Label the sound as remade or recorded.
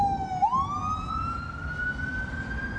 recorded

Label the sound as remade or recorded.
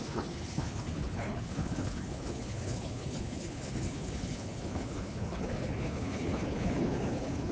remade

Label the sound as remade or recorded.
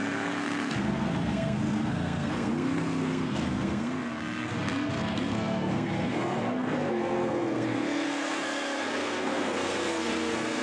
remade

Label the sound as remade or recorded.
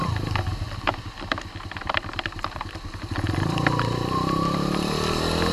remade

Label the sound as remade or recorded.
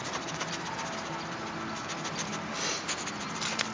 recorded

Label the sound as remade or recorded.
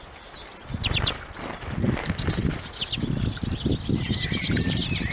recorded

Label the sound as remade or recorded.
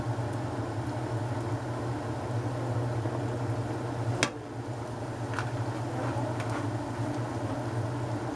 recorded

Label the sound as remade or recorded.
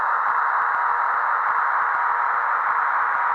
recorded